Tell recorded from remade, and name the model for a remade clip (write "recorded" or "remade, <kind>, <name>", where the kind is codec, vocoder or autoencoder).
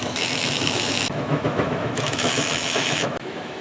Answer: remade, autoencoder, DAC-VAE